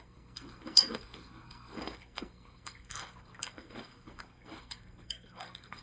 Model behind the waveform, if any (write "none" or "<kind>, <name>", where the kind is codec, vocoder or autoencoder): codec, SNAC